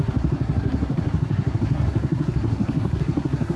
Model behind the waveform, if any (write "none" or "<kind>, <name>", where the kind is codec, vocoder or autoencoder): codec, SNAC